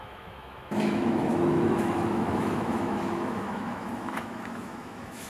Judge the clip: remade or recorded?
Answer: remade